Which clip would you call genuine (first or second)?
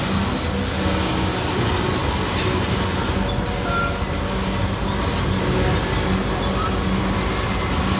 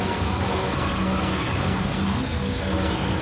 first